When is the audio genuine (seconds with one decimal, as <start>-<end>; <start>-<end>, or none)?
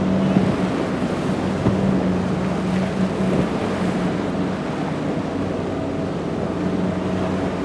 0.0-7.6